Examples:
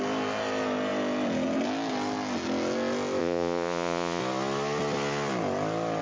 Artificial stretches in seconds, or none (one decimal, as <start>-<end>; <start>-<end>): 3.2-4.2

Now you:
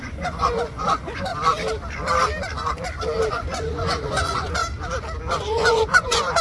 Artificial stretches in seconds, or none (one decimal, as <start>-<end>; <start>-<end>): 0.0-1.3; 3.3-4.6; 5.3-6.4

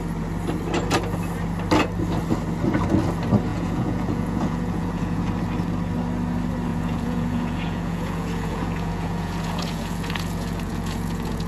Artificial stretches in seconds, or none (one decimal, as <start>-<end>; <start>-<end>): 3.5-5.3; 6.7-11.5

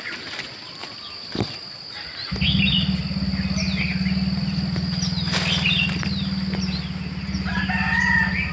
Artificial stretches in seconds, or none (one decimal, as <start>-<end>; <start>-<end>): none

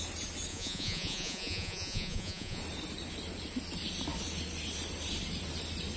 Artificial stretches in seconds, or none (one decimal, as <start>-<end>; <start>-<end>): 0.5-2.6

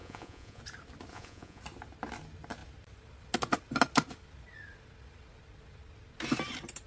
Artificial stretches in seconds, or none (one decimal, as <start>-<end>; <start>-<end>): 0.0-0.6; 1.1-1.6

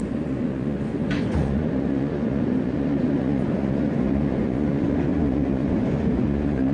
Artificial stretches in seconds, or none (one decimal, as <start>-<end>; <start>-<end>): 0.0-6.7

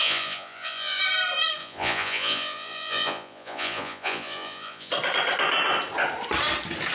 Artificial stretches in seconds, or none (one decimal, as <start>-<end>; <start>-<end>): 0.0-1.0; 1.6-4.9